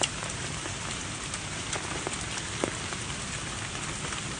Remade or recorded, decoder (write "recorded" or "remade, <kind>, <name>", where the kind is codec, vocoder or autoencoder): recorded